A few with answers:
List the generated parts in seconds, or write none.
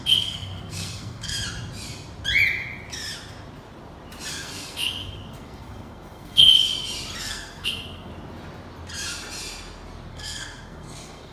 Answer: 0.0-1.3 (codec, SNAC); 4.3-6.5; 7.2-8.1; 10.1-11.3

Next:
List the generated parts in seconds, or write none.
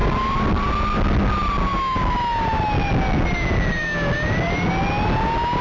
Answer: 0.0-0.7 (vocoder, BigVGAN v2)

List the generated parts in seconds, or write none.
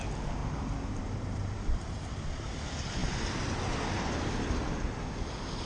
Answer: 0.4-2.0 (vocoder, BigVGAN v2)